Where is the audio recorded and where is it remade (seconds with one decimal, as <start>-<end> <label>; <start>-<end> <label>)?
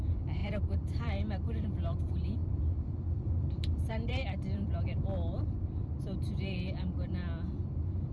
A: 0.0-0.4 recorded; 0.4-2.0 remade; 2.0-2.4 recorded; 2.4-6.8 remade; 6.8-8.1 recorded